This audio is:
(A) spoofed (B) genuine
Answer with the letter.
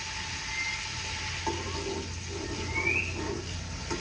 B